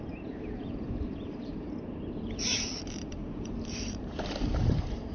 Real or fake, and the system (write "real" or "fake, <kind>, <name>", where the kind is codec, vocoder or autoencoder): fake, vocoder, BigVGAN v2